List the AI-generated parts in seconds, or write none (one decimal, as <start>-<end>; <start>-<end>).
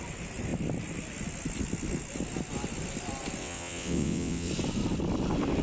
3.4-4.5